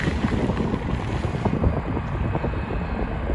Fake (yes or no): no